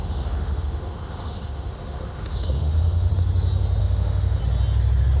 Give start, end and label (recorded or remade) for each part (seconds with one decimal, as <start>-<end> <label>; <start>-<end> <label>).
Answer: 0.0-3.1 remade; 3.1-3.8 recorded; 3.8-4.4 remade; 4.4-5.2 recorded